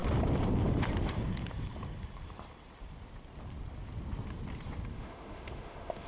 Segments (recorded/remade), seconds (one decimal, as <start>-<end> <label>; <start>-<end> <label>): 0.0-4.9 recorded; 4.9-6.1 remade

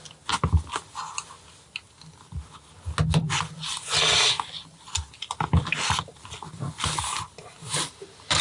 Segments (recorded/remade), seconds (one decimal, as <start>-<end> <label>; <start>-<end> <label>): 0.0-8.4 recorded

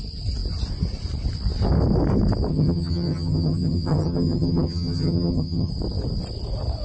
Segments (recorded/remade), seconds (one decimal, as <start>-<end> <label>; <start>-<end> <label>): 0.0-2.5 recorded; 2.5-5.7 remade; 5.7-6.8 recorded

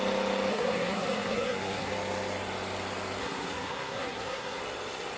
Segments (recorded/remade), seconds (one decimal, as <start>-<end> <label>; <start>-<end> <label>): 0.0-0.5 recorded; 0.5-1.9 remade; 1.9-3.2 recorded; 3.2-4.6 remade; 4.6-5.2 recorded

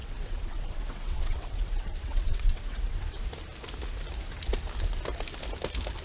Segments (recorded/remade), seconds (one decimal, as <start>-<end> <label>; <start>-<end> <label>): 0.0-3.2 remade; 3.2-6.0 recorded

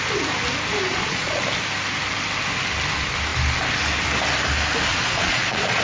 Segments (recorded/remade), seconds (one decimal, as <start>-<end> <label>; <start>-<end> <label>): 0.0-0.9 recorded; 0.9-1.4 remade; 1.4-4.9 recorded; 4.9-5.8 remade